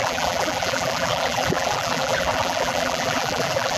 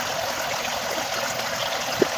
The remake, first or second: first